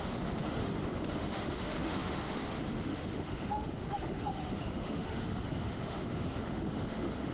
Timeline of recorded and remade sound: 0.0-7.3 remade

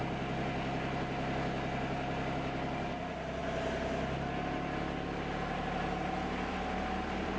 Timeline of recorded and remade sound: 0.0-7.4 recorded

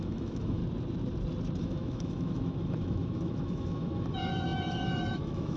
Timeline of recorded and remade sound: 0.0-0.6 remade; 0.6-1.6 recorded; 1.6-5.6 remade

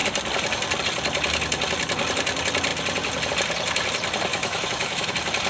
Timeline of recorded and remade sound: 0.0-4.3 recorded; 4.3-5.1 remade; 5.1-5.5 recorded

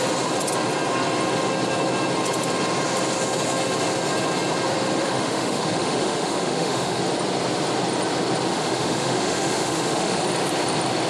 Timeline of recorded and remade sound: 0.0-5.0 recorded; 5.0-7.0 remade; 7.0-8.5 recorded; 8.5-10.2 remade; 10.2-11.1 recorded

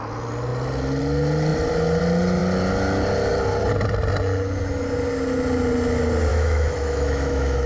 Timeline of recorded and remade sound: 0.0-6.3 recorded; 6.3-7.7 remade

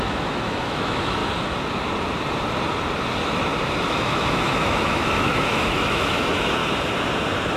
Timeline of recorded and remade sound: 0.0-1.2 remade; 1.2-4.0 recorded; 4.0-6.6 remade; 6.6-7.6 recorded

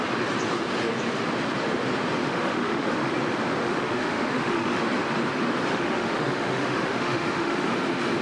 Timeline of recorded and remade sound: 0.0-2.2 recorded; 2.2-3.1 remade; 3.1-3.6 recorded; 3.6-4.8 remade; 4.8-5.7 recorded; 5.7-7.7 remade; 7.7-8.2 recorded